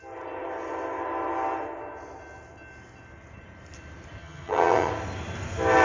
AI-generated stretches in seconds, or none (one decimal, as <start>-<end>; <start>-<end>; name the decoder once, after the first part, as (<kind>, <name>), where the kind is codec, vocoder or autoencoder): 4.2-4.9 (vocoder, HiFi-GAN)